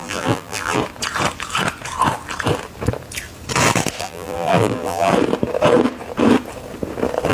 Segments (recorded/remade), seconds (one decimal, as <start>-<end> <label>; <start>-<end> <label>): 0.0-0.8 remade; 0.8-4.0 recorded; 4.0-5.1 remade; 5.1-7.3 recorded